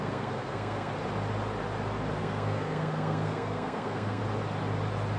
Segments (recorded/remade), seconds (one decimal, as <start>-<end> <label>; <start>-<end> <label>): 0.0-0.9 remade; 0.9-2.2 recorded; 2.2-4.2 remade; 4.2-5.2 recorded